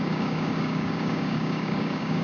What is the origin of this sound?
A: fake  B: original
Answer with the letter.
A